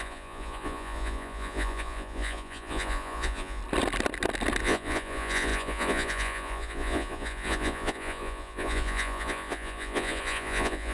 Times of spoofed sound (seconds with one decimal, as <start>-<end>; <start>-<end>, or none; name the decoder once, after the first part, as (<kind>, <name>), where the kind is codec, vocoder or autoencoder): 0.0-3.6 (vocoder, Vocos); 4.6-10.9